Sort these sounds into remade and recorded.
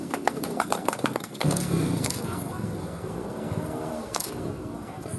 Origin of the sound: remade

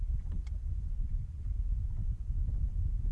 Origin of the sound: recorded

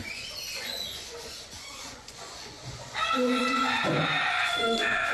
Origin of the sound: remade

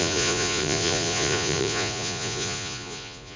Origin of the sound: remade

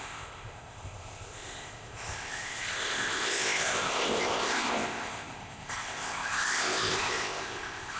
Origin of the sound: remade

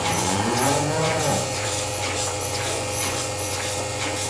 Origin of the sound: remade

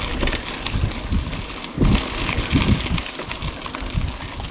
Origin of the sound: recorded